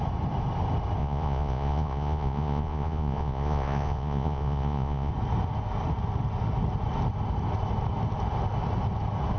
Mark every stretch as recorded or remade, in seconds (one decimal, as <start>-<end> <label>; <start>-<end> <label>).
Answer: 0.0-1.0 recorded; 1.0-5.1 remade; 5.1-9.4 recorded